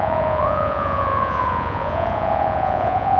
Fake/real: fake